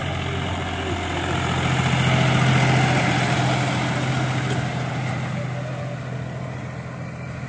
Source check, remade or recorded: recorded